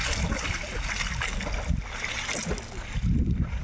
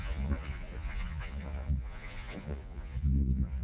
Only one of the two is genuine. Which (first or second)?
first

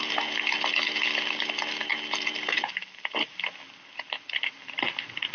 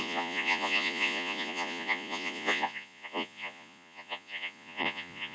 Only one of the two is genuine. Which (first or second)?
first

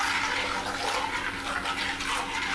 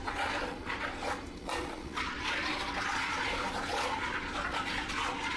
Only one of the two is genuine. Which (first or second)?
first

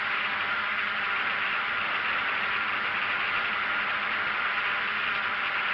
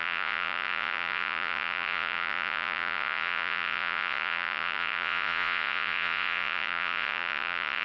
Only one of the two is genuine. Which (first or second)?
first